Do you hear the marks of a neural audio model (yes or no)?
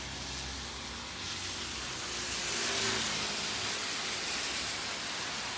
no